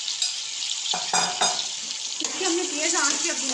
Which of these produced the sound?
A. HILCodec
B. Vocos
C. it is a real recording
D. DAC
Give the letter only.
C